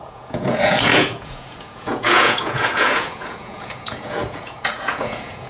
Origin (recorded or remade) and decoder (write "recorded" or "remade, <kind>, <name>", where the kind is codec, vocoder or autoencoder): remade, vocoder, Vocos